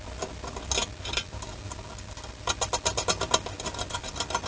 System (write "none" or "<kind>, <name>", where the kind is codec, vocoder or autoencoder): none